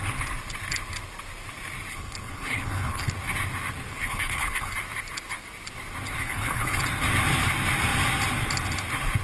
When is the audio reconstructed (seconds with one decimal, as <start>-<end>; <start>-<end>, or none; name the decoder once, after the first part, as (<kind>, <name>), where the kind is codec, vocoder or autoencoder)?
1.9-3.1 (codec, HILCodec); 3.9-4.7; 6.2-6.8